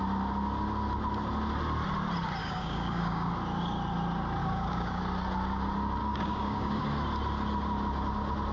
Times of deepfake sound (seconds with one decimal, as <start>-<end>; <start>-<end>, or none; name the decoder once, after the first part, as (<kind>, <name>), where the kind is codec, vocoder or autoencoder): 2.4-3.3 (codec, DAC); 4.4-5.0; 6.0-6.8